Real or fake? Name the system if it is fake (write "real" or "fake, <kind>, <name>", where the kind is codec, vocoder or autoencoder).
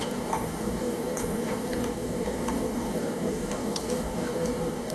fake, codec, DAC